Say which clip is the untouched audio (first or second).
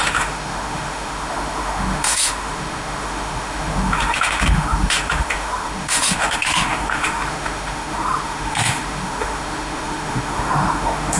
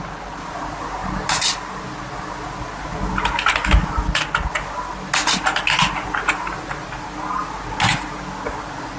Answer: second